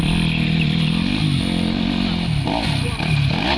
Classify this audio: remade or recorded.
recorded